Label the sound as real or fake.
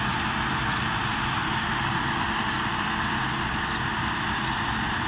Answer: real